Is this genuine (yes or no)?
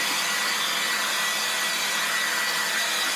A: yes